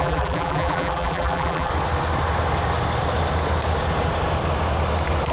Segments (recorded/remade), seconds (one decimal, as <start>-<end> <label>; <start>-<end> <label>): 0.0-1.7 remade; 1.7-5.3 recorded